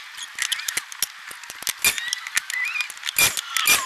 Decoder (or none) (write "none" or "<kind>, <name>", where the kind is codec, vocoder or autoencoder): none